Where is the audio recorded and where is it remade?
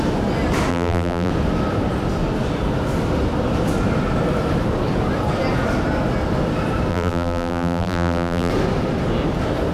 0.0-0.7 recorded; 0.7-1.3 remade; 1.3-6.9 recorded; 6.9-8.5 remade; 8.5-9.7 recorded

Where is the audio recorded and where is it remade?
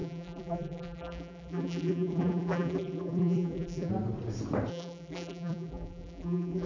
0.0-3.9 remade; 3.9-4.7 recorded; 4.7-6.7 remade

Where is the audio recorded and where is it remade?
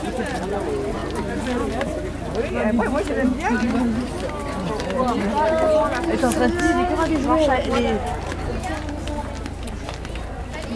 0.0-10.8 recorded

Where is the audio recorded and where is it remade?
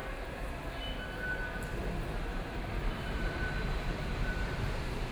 0.0-2.3 recorded; 2.3-5.1 remade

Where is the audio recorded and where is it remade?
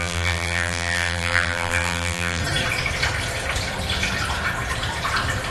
0.0-2.4 remade; 2.4-5.5 recorded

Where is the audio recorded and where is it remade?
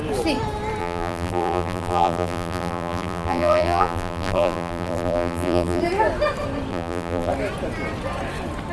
0.0-0.8 recorded; 0.8-5.8 remade; 5.8-6.7 recorded; 6.7-7.3 remade; 7.3-8.7 recorded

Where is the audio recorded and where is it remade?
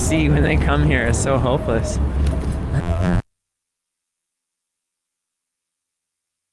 0.0-2.8 recorded; 2.8-6.5 remade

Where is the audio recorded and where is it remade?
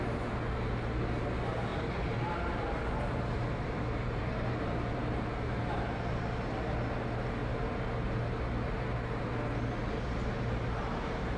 0.0-1.7 recorded; 1.7-5.3 remade; 5.3-11.4 recorded